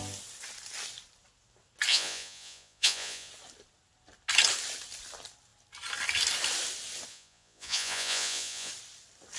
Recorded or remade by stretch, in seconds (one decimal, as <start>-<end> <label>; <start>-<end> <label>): 0.0-1.9 recorded; 1.9-3.3 remade; 3.3-7.1 recorded; 7.1-8.7 remade; 8.7-9.4 recorded